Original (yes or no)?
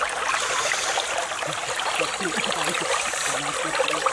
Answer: yes